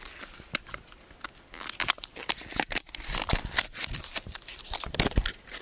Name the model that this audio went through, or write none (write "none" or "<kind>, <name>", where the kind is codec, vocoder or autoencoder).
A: none